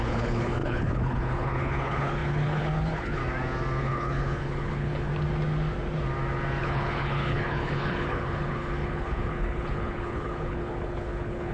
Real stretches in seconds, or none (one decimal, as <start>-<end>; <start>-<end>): 3.2-3.8; 5.1-6.6